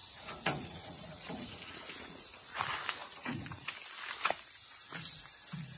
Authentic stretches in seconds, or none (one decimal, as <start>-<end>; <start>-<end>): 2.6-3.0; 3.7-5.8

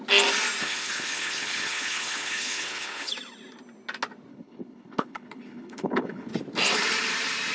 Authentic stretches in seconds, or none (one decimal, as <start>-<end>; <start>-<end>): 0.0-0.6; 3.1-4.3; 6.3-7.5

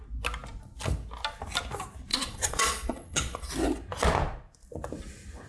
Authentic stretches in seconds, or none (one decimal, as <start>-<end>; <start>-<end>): 0.0-2.1; 3.5-5.5

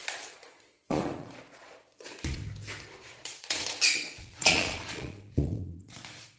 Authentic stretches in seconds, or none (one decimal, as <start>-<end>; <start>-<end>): 2.4-3.0

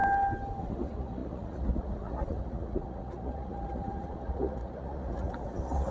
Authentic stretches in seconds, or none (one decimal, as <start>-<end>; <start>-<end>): 0.0-0.6

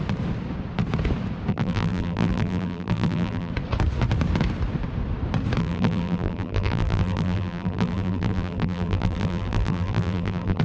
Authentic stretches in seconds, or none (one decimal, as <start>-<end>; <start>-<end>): 0.0-1.5; 3.5-5.6

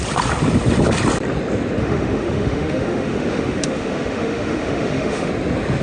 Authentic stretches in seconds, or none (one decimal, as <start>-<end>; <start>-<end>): 0.0-1.8; 5.3-5.8